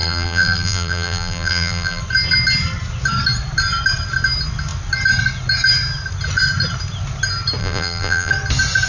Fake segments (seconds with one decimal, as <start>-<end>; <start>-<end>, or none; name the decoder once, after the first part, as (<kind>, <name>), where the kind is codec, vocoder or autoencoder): 0.0-2.0 (vocoder, BigVGAN v2); 7.6-8.3